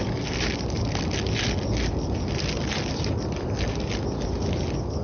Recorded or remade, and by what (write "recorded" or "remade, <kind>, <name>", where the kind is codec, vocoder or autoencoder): recorded